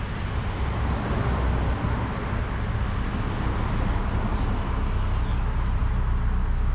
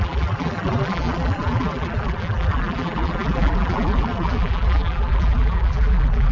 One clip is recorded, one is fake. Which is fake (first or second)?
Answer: second